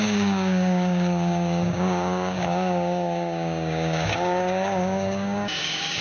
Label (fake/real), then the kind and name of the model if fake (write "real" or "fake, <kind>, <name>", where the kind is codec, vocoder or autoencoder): fake, codec, DAC